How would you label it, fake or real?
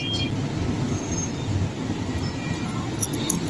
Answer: real